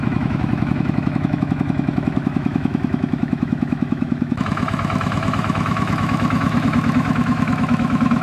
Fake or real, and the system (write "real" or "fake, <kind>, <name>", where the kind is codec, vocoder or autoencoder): fake, autoencoder, DAC-VAE